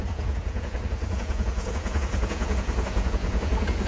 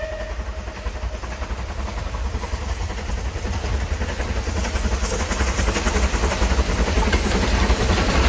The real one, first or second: second